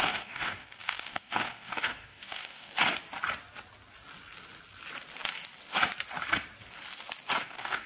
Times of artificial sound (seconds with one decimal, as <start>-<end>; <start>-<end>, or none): 0.0-2.7; 7.4-7.9